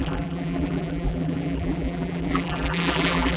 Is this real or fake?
fake